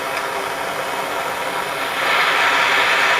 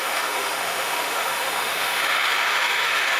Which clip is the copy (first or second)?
second